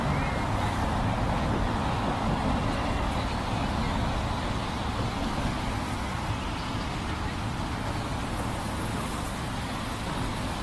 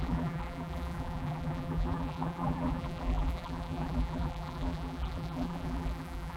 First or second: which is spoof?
second